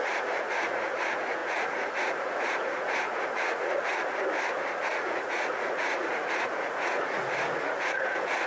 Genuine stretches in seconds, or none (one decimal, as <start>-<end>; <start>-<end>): 3.9-4.8